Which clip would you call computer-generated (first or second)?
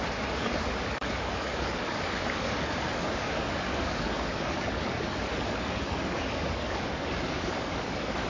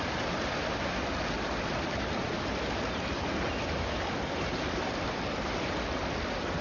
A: first